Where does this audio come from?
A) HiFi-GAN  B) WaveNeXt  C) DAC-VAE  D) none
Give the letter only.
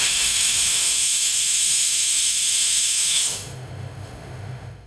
C